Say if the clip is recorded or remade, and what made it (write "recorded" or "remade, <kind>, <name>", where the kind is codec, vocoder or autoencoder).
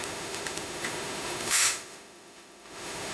remade, autoencoder, DAC-VAE